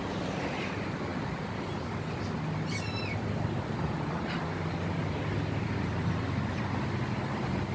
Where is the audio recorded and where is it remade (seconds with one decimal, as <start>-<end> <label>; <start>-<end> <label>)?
0.0-7.7 recorded